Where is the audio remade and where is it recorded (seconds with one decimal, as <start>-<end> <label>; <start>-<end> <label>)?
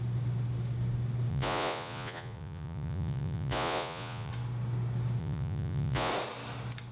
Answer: 0.0-1.3 recorded; 1.3-4.3 remade; 4.3-5.2 recorded; 5.2-6.1 remade; 6.1-6.9 recorded